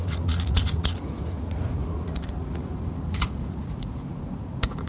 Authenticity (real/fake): fake